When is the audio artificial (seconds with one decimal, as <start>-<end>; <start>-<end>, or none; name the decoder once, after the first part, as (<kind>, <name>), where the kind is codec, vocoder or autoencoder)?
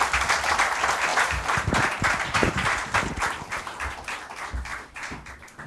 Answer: 1.1-1.7 (vocoder, BigVGAN v2); 2.4-3.0; 4.7-5.3